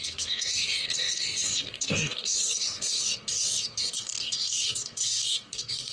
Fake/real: fake